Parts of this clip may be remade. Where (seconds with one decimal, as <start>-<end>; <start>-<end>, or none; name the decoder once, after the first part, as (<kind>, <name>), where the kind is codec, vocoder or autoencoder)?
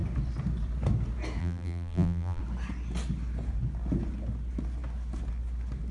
1.4-2.4 (vocoder, BigVGAN v2)